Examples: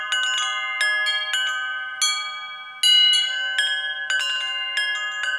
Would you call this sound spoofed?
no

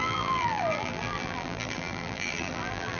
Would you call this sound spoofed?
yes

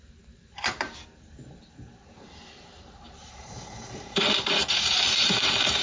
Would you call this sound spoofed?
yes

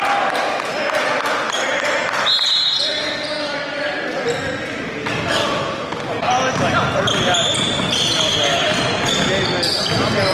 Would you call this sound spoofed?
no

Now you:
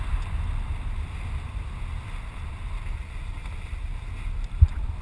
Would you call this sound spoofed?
no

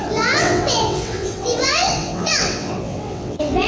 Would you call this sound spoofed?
yes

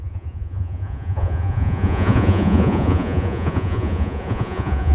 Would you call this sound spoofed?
yes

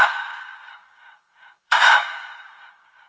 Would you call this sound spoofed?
yes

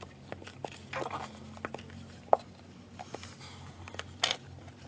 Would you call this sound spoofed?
no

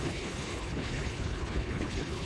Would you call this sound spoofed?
yes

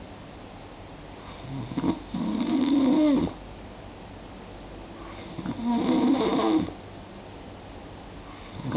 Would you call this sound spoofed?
no